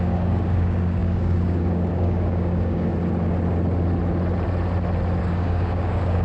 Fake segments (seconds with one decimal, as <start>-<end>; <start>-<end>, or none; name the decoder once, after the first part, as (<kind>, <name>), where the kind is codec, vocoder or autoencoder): 0.0-2.9 (codec, DAC); 5.2-6.2